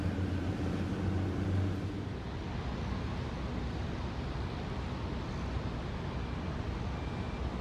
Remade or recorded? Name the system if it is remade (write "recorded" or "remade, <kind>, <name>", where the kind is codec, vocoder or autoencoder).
recorded